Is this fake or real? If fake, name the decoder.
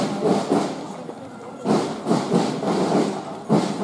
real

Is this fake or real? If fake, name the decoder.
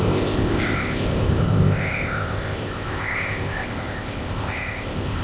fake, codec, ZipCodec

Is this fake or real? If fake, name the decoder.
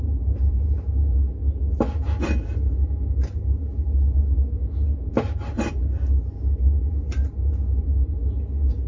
real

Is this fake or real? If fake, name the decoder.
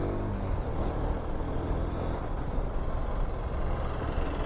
real